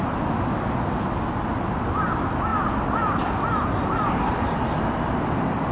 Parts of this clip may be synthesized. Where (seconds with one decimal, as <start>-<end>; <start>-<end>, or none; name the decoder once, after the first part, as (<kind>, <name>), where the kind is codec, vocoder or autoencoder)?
none